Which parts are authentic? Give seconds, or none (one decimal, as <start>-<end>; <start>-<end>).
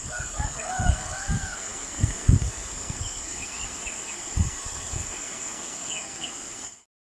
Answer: none